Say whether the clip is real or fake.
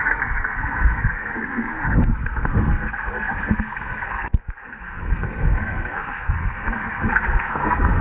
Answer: fake